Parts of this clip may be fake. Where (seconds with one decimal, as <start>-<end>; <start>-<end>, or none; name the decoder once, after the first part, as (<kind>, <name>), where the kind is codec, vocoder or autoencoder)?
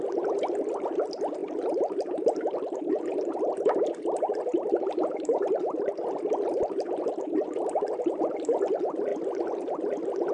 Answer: 1.4-3.0 (vocoder, BigVGAN v2); 4.5-6.0